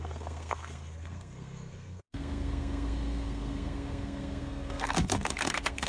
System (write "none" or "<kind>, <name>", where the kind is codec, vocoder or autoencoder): codec, SNAC